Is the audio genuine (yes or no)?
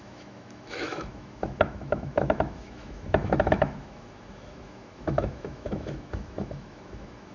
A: no